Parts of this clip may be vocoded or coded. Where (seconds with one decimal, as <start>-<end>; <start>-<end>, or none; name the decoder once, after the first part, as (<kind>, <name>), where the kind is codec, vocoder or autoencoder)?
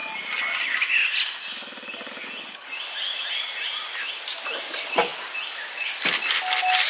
none